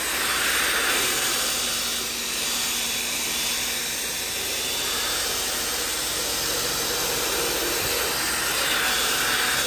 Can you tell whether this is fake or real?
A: real